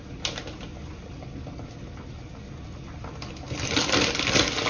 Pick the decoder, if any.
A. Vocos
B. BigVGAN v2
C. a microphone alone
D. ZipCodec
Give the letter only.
C